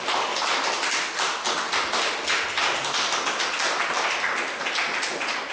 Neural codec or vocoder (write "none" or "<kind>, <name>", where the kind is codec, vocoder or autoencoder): none